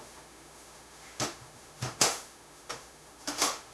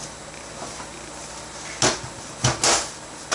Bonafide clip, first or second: second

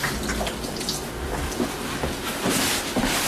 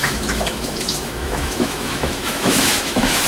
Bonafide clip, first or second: first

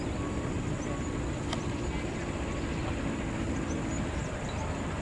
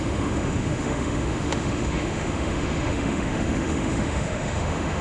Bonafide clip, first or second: first